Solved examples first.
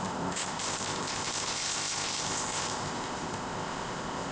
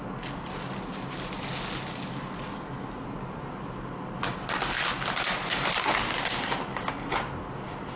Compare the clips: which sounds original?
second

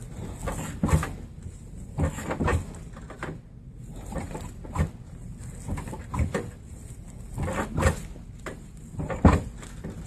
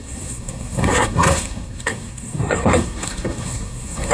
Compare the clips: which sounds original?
first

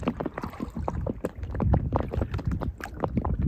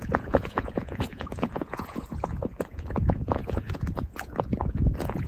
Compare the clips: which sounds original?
first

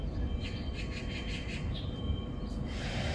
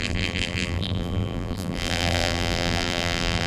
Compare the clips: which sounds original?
first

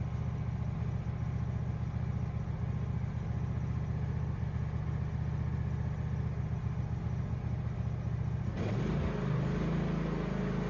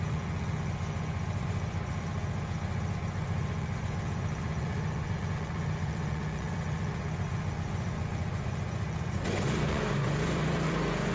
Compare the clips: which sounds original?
first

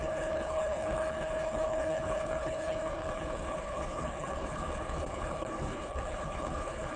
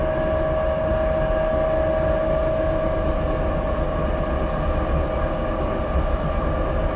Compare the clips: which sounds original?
second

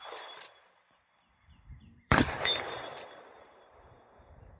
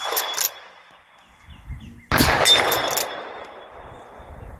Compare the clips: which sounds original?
second